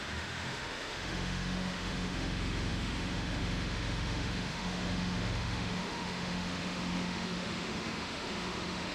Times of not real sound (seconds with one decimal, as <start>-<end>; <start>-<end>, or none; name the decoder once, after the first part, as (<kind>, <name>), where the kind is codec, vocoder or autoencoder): 0.0-8.9 (autoencoder, DAC-VAE)